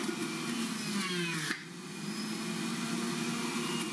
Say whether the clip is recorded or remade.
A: recorded